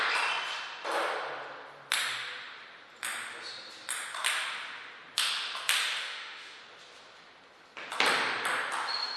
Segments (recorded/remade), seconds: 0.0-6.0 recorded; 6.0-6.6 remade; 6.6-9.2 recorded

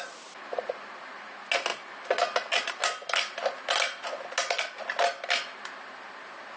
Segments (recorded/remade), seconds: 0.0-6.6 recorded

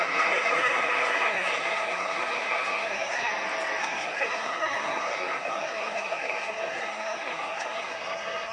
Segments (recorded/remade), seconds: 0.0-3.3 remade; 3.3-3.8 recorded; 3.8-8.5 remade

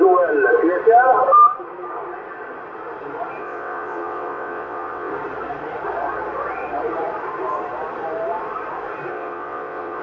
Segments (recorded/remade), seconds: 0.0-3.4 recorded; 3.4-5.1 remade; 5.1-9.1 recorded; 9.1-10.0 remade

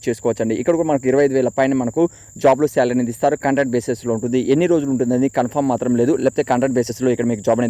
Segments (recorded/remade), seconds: 0.0-7.7 recorded